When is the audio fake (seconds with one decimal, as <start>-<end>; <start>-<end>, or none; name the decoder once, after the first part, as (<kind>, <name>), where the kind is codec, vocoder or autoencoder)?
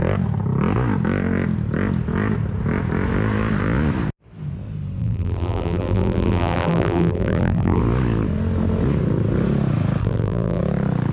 5.0-7.8 (vocoder, BigVGAN v2); 10.0-10.6